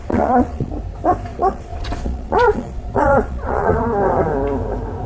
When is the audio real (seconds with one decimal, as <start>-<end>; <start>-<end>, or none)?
0.7-1.3; 3.8-5.1